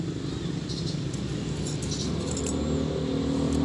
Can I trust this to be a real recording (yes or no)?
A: yes